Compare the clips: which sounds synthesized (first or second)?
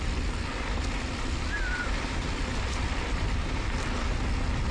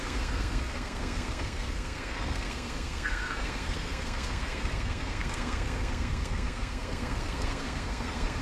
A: second